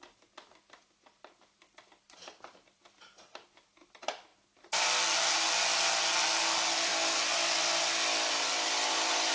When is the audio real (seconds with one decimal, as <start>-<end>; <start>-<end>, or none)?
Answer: 0.0-9.3